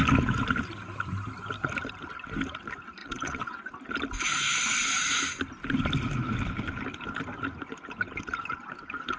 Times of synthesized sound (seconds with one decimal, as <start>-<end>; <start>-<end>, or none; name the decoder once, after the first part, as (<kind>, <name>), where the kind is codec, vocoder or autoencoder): 3.0-3.7 (vocoder, WaveNeXt)